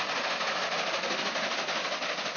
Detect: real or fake real